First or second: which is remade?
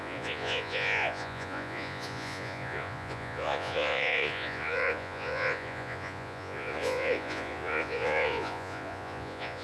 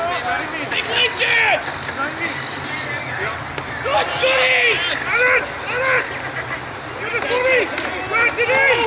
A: first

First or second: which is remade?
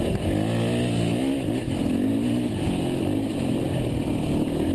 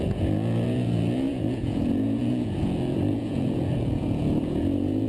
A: second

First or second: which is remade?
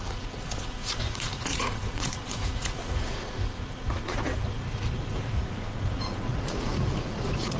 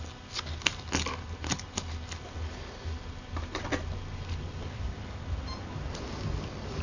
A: first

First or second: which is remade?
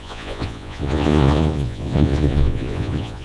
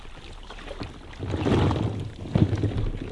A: first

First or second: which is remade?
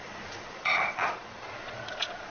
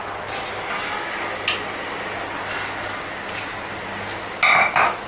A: first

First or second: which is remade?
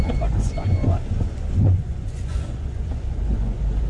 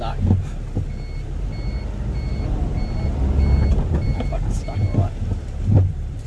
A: first